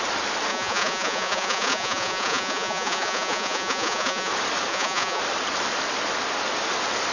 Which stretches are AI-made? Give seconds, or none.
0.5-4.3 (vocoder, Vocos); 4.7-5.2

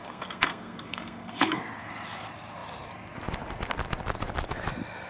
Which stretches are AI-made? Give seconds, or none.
0.0-1.6 (codec, SNAC)

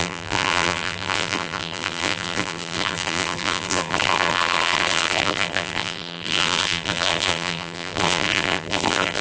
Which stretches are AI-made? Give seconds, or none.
0.0-9.2 (vocoder, BigVGAN v2)

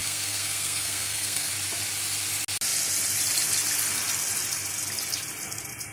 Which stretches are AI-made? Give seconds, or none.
0.0-1.5 (codec, SNAC)

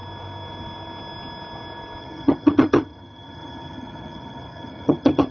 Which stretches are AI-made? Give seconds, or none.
2.0-5.3 (vocoder, HiFi-GAN)

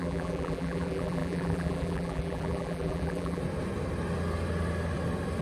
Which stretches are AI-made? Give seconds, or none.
0.0-3.4 (vocoder, BigVGAN v2)

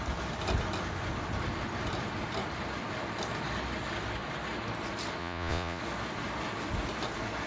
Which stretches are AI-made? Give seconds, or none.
5.2-5.8 (vocoder, Vocos)